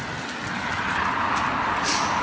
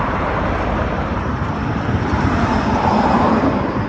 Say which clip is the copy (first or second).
second